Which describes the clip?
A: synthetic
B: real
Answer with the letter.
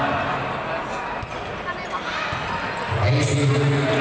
B